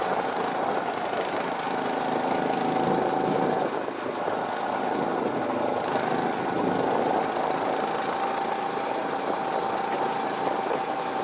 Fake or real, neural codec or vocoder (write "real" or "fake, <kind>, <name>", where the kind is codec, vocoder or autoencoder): real